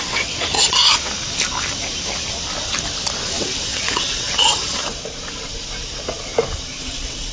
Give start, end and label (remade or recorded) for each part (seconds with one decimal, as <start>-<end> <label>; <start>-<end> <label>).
0.0-0.8 remade; 0.8-3.4 recorded; 3.4-4.8 remade; 4.8-6.8 recorded; 6.8-7.3 remade